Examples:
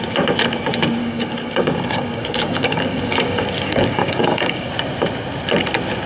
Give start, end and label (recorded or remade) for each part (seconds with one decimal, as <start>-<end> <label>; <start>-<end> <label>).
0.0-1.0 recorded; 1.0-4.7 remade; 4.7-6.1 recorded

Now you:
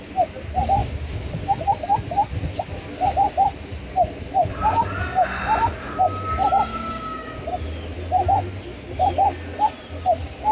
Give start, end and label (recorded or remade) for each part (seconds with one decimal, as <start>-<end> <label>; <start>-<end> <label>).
0.0-0.8 recorded; 0.8-1.6 remade; 1.6-6.7 recorded; 6.7-7.4 remade; 7.4-10.5 recorded

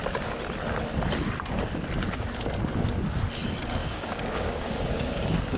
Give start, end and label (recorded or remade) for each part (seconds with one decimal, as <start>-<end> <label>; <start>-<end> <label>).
0.0-3.8 recorded; 3.8-5.6 remade